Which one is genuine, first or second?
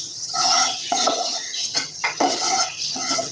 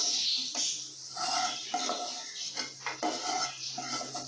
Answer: second